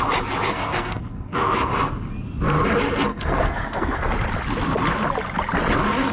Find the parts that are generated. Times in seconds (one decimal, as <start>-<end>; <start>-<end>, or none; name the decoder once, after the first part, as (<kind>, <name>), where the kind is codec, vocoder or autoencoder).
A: 0.5-1.7 (codec, SNAC); 3.1-4.1